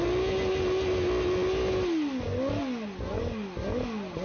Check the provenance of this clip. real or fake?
real